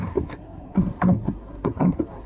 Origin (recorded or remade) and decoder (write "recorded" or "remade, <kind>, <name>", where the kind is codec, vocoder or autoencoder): remade, codec, SNAC